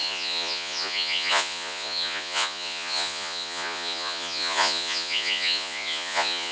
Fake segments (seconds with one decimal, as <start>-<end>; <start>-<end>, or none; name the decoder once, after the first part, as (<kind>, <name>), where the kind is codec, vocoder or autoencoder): 0.0-6.5 (vocoder, Vocos)